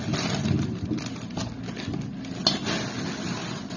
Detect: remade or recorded recorded